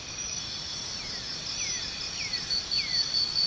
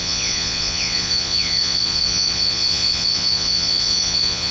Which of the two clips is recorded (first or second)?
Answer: first